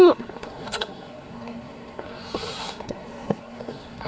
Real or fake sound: fake